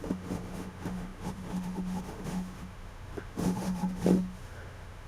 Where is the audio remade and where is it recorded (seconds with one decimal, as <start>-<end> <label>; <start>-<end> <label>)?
0.0-5.1 remade